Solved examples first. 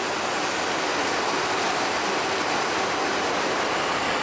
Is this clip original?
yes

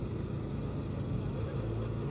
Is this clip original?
yes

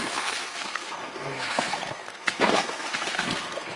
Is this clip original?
no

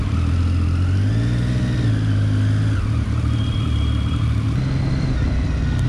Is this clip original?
yes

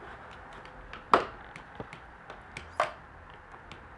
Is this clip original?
yes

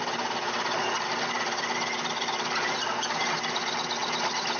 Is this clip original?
yes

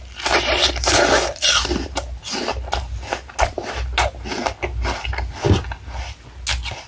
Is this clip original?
yes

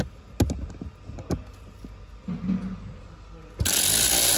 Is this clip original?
yes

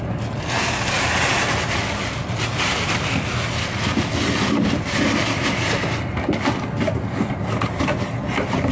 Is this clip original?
yes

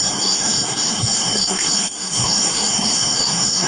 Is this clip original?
no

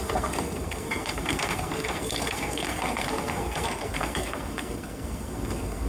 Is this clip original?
no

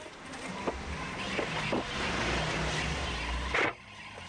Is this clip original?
yes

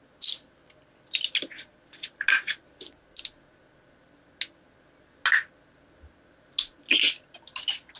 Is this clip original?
yes